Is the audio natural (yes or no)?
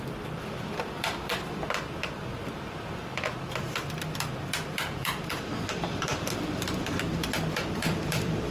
no